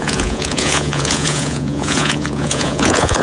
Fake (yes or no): yes